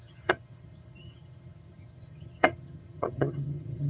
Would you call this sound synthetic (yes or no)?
yes